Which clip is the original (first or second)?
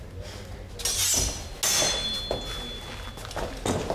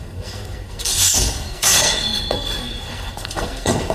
first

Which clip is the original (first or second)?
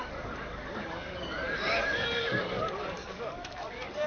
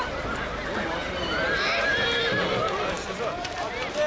second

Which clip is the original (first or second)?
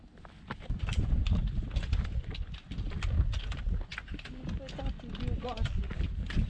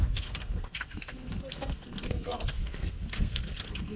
first